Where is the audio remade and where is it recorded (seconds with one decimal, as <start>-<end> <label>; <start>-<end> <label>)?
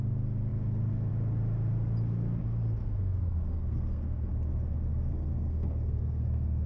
0.0-2.8 recorded; 2.8-4.3 remade; 4.3-4.9 recorded; 4.9-6.7 remade